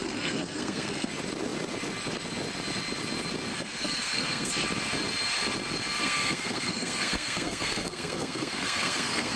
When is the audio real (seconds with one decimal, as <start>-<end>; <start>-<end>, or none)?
1.1-3.5; 4.5-6.0